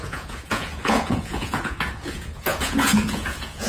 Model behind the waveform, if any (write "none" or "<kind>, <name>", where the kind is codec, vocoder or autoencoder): vocoder, Vocos